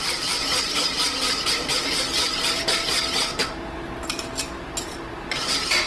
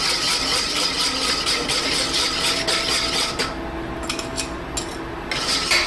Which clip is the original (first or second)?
second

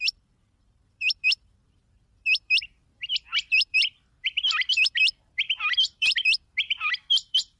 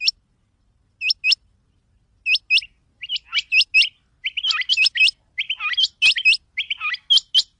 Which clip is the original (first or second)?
second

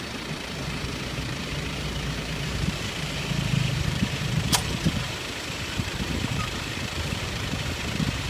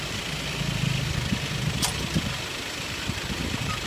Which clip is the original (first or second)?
second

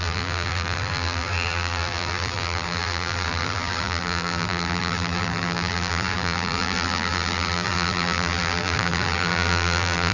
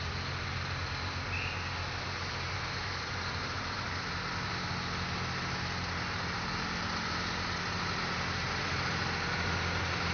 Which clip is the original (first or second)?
second